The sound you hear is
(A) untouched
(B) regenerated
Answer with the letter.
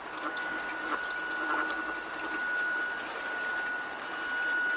A